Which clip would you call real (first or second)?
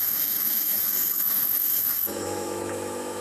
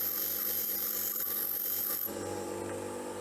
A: second